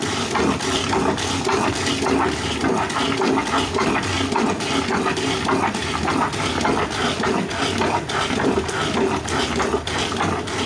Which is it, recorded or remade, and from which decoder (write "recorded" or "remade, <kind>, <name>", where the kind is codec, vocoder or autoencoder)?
recorded